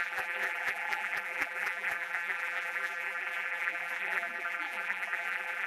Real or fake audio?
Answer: fake